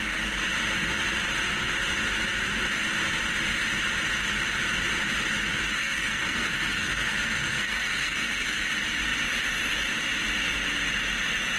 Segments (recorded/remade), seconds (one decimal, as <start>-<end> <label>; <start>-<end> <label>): 0.0-5.8 recorded; 5.8-8.6 remade; 8.6-11.6 recorded